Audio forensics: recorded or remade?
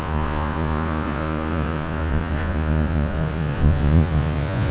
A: remade